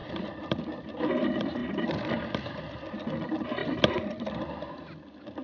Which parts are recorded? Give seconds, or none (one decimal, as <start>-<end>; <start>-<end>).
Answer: 0.6-3.6; 4.8-5.4